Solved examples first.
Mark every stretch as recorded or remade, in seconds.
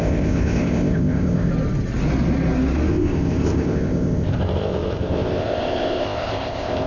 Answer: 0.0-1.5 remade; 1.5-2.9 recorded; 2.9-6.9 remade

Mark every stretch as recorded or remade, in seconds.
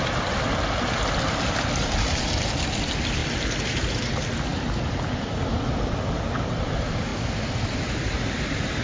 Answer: 0.0-8.8 recorded